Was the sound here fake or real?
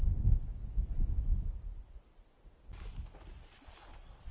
real